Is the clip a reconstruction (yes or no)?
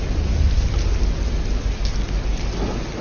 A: no